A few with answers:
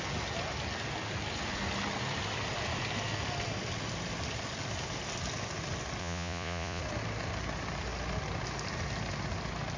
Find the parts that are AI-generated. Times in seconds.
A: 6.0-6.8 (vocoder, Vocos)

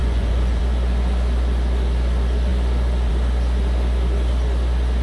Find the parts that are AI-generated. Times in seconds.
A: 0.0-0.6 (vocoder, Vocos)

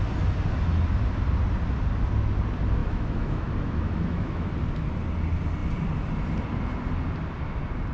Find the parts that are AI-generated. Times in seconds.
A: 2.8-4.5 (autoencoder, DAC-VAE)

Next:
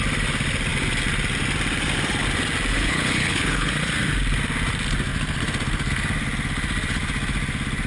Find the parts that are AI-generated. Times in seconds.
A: 2.7-3.7 (codec, HILCodec)

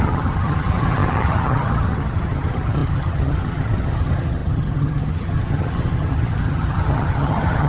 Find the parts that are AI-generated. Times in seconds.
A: 0.0-7.7 (vocoder, HiFi-GAN)

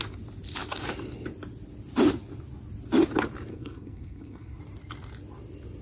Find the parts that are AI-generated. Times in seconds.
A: 3.5-4.6 (codec, SNAC)

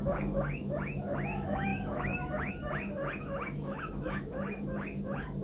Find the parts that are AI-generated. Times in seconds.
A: 0.0-5.4 (autoencoder, DAC-VAE)

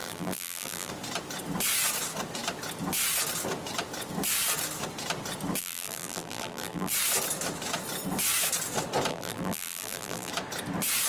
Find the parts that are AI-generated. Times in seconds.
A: 0.0-0.9 (vocoder, BigVGAN v2); 5.6-6.9; 9.1-10.3